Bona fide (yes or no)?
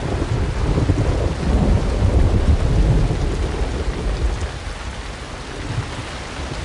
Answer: yes